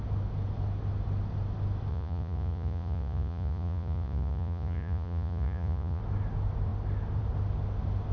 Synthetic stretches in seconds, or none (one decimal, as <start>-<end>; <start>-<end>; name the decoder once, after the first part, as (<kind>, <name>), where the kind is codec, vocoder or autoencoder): 1.9-6.0 (vocoder, Vocos)